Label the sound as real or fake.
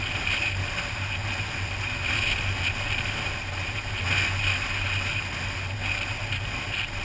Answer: real